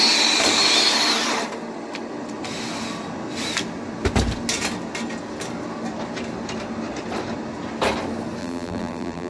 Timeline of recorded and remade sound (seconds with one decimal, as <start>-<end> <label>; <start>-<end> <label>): 0.0-8.4 recorded; 8.4-9.3 remade